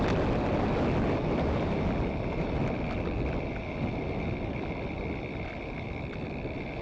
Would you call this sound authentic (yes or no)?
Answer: yes